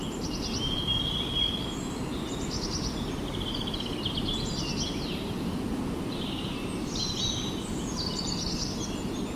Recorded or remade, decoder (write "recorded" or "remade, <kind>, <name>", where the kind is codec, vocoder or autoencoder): recorded